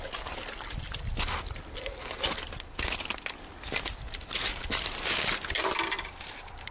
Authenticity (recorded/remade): recorded